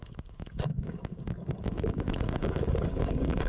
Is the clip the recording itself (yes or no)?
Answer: no